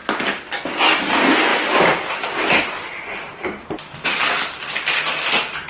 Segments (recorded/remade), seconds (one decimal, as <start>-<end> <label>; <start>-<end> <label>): 0.0-5.7 recorded